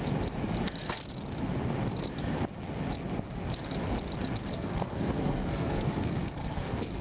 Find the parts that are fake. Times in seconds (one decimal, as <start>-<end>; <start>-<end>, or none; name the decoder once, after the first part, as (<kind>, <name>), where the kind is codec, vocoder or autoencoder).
4.5-7.0 (codec, SNAC)